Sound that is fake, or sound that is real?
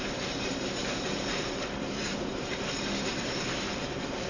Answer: fake